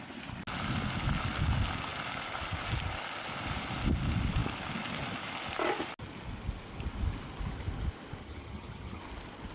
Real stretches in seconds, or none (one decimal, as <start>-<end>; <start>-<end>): 0.0-8.2; 9.0-9.5